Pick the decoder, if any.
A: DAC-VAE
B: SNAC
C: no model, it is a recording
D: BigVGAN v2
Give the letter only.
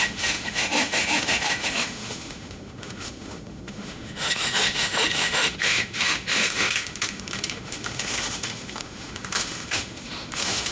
A